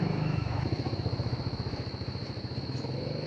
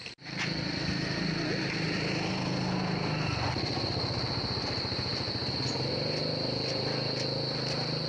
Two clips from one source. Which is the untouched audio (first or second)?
second